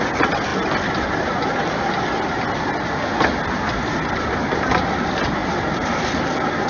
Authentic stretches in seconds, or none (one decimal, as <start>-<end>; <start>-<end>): 0.0-6.7